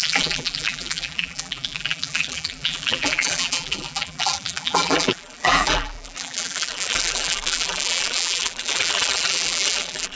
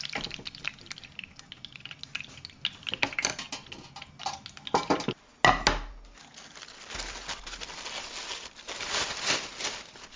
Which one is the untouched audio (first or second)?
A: second